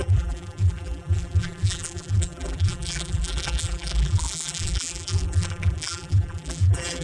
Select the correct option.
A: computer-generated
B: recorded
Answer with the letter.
A